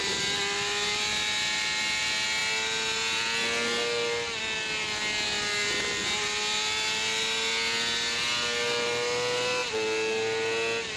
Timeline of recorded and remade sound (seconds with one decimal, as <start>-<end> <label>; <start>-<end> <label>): 0.0-11.0 recorded